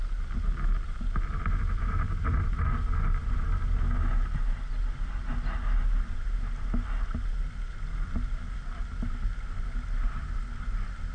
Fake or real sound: real